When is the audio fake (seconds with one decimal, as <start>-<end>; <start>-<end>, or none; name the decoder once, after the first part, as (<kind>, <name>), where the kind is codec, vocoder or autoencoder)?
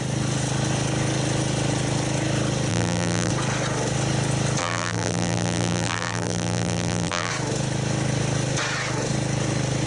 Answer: 2.7-3.3 (vocoder, BigVGAN v2); 4.6-7.3